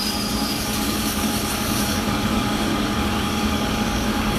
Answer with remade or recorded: remade